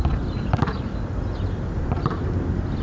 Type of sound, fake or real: real